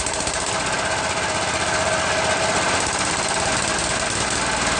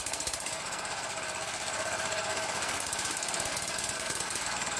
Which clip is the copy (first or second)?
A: second